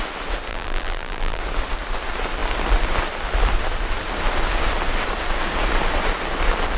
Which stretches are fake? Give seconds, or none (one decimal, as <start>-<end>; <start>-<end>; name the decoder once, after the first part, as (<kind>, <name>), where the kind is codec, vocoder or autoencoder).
0.5-1.4 (vocoder, BigVGAN v2)